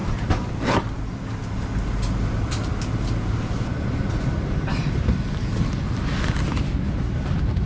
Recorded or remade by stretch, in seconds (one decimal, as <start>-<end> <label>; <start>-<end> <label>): 0.0-7.7 recorded